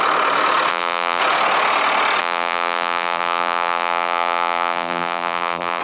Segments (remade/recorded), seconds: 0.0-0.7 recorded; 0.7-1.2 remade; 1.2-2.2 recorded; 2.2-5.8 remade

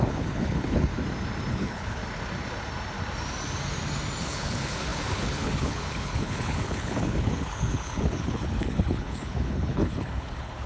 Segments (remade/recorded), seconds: 0.0-0.9 remade; 0.9-1.5 recorded; 1.5-2.0 remade; 2.0-4.2 recorded; 4.2-10.7 remade